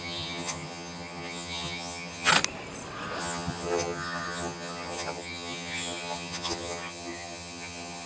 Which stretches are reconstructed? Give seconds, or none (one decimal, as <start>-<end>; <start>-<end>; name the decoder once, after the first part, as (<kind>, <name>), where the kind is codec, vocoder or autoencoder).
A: 0.0-2.3 (vocoder, HiFi-GAN); 3.2-8.1